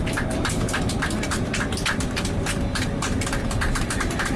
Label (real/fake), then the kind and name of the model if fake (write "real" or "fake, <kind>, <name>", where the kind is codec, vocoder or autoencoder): real